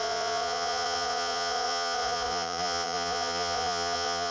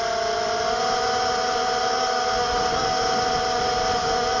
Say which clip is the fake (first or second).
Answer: first